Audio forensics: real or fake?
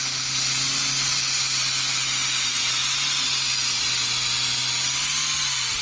real